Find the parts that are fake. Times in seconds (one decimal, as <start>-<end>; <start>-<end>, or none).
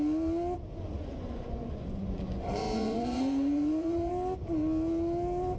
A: 0.7-4.1